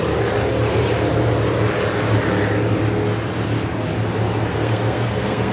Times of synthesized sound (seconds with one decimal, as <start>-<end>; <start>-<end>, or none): 4.5-5.5